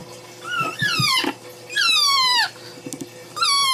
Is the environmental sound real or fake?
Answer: real